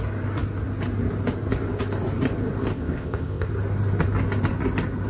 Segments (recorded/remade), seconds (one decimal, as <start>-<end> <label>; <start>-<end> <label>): 0.0-2.7 recorded; 2.7-3.5 remade; 3.5-5.1 recorded